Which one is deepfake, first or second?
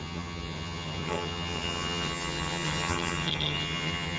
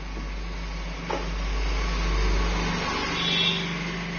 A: first